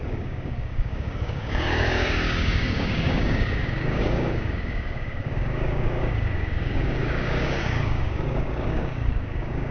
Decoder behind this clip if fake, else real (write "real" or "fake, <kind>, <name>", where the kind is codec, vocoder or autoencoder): fake, codec, DAC